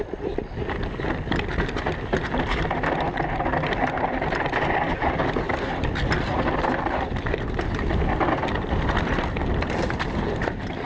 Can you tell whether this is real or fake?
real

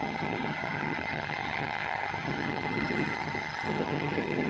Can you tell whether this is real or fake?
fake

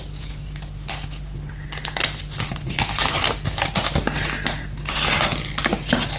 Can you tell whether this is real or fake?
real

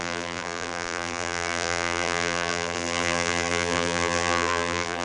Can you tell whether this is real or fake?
fake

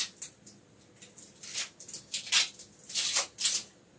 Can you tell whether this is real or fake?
real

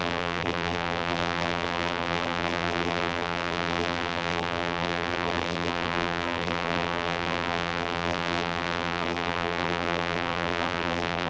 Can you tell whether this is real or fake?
fake